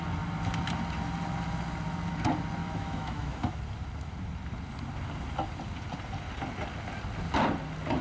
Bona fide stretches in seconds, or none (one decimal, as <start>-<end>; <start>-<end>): 0.0-2.6; 3.5-8.0